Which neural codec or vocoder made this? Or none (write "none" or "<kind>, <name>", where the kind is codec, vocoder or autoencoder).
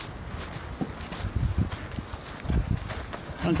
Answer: none